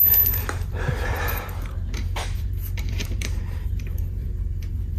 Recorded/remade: remade